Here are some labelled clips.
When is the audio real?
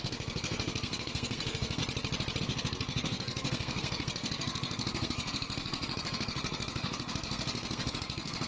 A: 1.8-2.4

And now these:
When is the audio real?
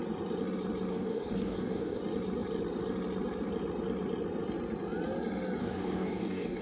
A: 0.0-0.9; 2.0-5.6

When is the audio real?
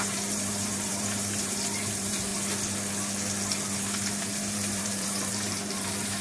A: 2.3-4.1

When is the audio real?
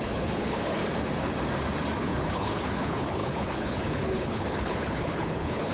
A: 0.8-2.0